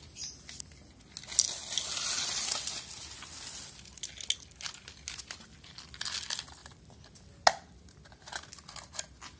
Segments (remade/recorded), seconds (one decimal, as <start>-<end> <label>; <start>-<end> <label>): 0.0-9.4 recorded